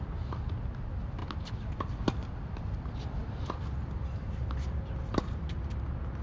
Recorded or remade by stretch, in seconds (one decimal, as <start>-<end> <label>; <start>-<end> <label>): 0.0-6.2 recorded